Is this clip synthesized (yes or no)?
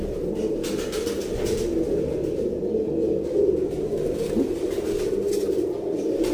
no